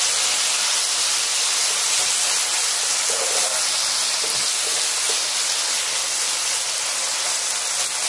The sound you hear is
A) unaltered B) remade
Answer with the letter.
A